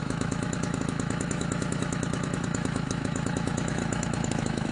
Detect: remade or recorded remade